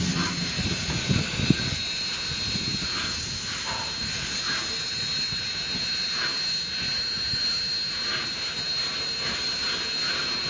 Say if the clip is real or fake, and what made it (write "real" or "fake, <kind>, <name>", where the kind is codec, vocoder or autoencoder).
real